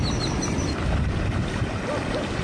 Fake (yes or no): yes